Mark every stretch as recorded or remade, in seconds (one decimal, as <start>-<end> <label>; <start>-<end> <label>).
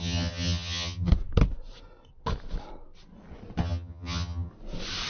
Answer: 0.0-1.1 remade; 1.1-3.6 recorded; 3.6-4.5 remade; 4.5-5.1 recorded